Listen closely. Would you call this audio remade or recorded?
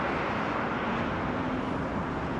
recorded